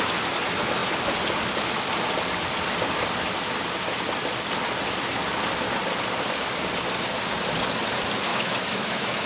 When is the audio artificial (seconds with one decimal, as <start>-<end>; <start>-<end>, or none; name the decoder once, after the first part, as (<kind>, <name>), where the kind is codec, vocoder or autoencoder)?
8.3-9.3 (autoencoder, DAC-VAE)